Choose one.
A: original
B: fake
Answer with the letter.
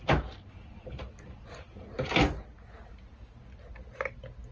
A